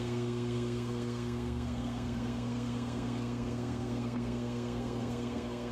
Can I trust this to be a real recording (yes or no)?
no